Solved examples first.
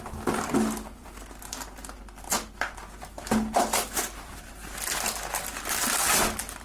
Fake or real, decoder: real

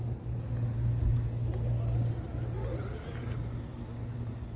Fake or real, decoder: real